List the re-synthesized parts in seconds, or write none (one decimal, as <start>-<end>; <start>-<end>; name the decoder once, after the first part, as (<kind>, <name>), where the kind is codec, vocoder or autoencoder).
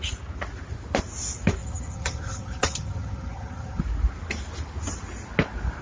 1.6-3.8 (vocoder, HiFi-GAN)